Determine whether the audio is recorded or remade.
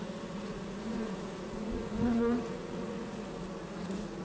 remade